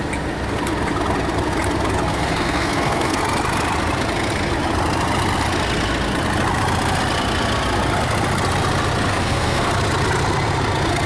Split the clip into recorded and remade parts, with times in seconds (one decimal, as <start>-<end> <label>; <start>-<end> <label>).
0.0-2.1 recorded; 2.1-3.2 remade; 3.2-9.1 recorded; 9.1-9.7 remade; 9.7-11.1 recorded